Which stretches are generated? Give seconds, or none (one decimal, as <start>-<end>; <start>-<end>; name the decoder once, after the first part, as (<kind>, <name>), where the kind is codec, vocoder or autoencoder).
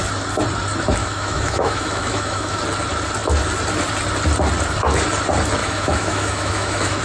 1.0-2.6 (autoencoder, DAC-VAE); 5.6-7.0